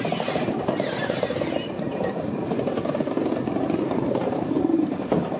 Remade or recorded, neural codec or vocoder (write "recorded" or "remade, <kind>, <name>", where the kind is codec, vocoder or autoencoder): remade, vocoder, BigVGAN v2